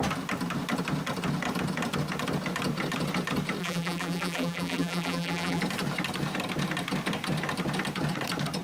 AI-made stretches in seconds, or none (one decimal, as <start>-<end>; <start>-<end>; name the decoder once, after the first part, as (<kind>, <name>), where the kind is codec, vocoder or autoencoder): 3.6-5.6 (vocoder, BigVGAN v2)